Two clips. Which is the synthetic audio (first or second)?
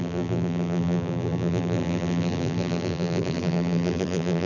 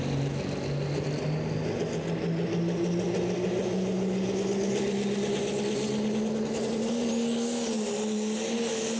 first